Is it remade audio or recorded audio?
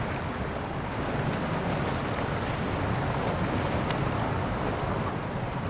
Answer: recorded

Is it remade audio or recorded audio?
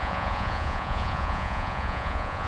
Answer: remade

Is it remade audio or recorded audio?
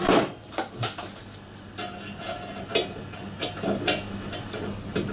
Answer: recorded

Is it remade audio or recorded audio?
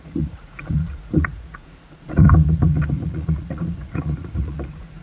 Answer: remade